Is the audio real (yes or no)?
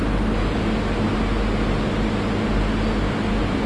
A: yes